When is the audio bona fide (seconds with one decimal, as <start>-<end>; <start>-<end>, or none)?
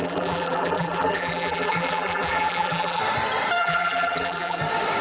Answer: 3.0-3.6; 4.6-5.0